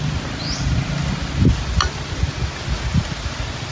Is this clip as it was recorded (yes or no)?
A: yes